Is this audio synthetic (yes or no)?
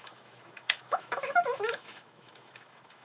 yes